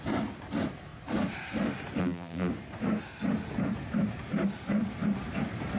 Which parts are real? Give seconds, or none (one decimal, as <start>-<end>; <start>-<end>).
0.0-2.0; 2.5-5.8